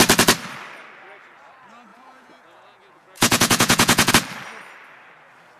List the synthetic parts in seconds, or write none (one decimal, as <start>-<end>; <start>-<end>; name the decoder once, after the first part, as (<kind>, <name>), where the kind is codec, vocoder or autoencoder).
1.9-4.1 (vocoder, Vocos)